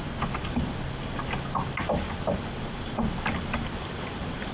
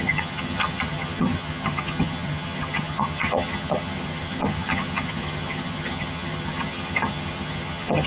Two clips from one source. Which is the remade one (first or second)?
second